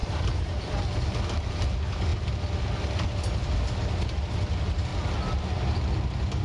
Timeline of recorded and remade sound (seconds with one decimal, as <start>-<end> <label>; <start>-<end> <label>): 0.0-0.9 remade; 0.9-6.4 recorded